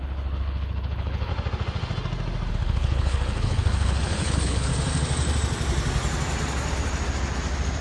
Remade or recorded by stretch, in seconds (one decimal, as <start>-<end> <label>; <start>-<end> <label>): 0.0-1.3 remade; 1.3-2.5 recorded; 2.5-4.7 remade; 4.7-7.8 recorded